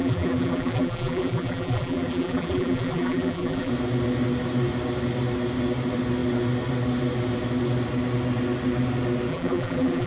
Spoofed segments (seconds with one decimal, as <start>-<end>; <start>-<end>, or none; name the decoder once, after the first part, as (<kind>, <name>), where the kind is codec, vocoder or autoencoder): 0.0-3.7 (vocoder, BigVGAN v2); 9.3-10.1

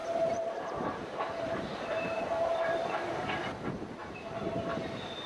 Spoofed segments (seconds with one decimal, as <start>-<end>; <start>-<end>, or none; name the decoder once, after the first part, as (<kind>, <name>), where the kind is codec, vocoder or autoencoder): 0.0-2.2 (vocoder, BigVGAN v2); 4.0-4.8